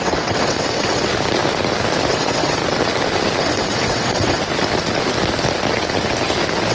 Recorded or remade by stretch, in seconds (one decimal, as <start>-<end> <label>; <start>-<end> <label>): 0.0-1.1 remade; 1.1-2.1 recorded; 2.1-2.6 remade; 2.6-3.4 recorded; 3.4-4.4 remade; 4.4-6.7 recorded

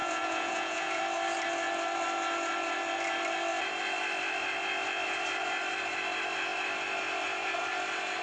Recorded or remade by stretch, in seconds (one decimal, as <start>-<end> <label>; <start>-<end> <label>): 0.0-1.0 remade; 1.0-8.2 recorded

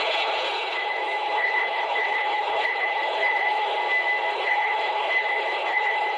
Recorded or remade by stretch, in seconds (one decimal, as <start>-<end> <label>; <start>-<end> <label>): 0.0-3.8 remade; 3.8-4.3 recorded; 4.3-6.2 remade

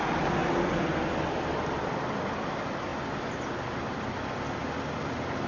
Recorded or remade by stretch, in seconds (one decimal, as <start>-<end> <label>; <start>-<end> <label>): 0.0-5.5 recorded